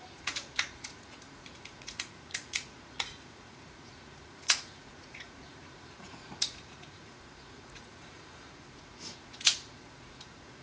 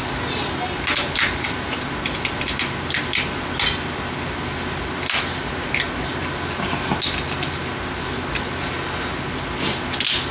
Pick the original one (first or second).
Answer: second